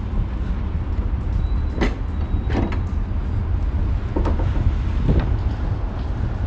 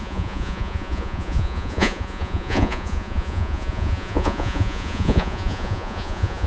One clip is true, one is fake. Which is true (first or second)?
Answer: first